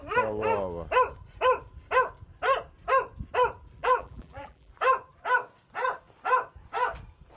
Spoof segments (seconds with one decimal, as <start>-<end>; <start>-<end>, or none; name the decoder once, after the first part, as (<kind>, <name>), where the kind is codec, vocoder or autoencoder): 3.8-4.7 (vocoder, BigVGAN v2)